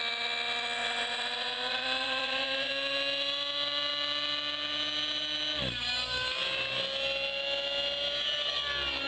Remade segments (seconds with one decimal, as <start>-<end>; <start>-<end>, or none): 0.8-2.7